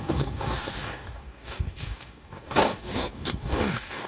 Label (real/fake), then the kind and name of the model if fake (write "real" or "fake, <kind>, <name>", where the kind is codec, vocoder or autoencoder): fake, codec, DAC